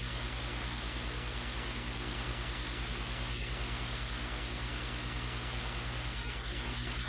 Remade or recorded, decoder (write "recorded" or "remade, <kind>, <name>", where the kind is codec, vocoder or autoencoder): remade, codec, SNAC